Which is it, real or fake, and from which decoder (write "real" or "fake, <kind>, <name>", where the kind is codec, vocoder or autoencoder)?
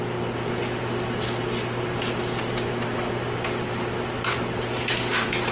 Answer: real